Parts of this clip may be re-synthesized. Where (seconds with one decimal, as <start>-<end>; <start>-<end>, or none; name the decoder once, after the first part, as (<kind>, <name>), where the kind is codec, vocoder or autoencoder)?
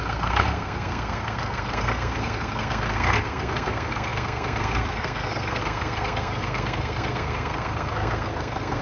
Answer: 0.0-8.8 (codec, SNAC)